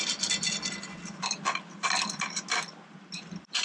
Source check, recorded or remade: recorded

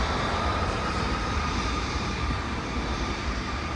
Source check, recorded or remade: remade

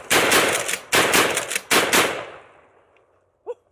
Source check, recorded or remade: recorded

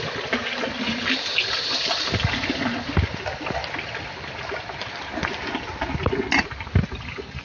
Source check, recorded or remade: recorded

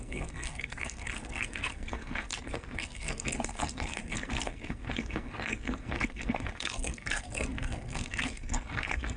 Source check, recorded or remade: remade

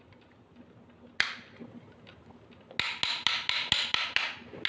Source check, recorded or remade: recorded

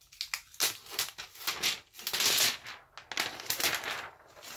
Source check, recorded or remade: recorded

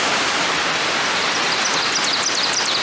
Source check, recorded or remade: remade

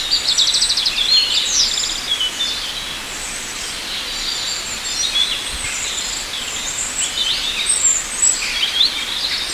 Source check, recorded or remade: recorded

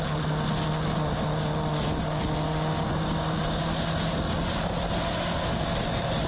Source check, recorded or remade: recorded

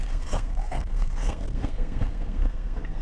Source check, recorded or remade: remade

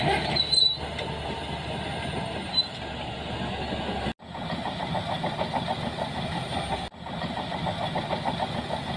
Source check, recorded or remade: recorded